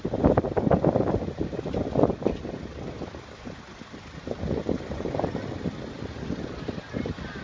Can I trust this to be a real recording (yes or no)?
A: yes